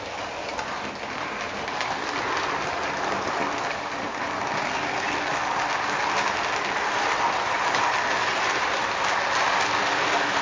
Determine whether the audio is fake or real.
real